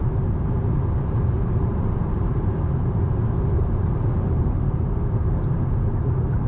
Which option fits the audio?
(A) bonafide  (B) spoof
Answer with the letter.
B